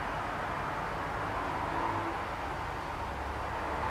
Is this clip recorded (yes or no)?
yes